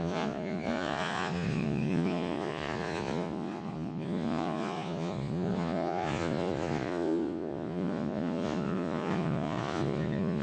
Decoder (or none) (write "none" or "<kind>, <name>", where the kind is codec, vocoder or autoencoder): vocoder, Vocos